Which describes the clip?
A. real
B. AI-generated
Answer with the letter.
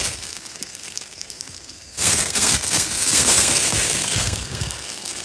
B